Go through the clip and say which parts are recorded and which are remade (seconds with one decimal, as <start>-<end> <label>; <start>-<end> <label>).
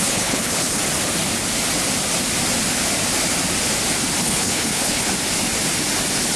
0.0-0.8 remade; 0.8-4.2 recorded; 4.2-5.1 remade; 5.1-6.4 recorded